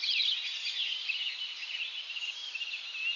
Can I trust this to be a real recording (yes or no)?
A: yes